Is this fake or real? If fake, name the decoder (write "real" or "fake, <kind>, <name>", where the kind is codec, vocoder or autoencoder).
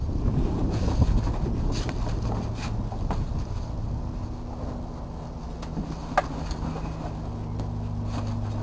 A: real